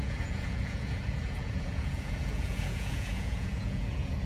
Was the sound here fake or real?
fake